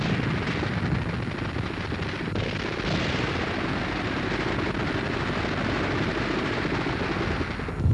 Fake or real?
real